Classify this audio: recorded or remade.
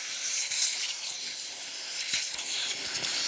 recorded